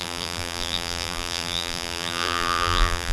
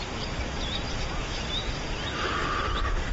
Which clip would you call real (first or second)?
second